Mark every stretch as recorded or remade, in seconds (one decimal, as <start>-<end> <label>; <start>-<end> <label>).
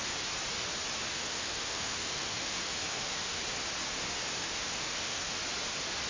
0.0-1.1 recorded; 1.1-3.4 remade; 3.4-4.4 recorded; 4.4-5.4 remade; 5.4-6.1 recorded